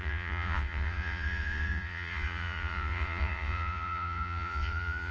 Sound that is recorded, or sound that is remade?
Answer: remade